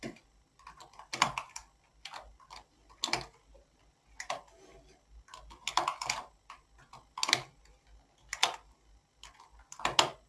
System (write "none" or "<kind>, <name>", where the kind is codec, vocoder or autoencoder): none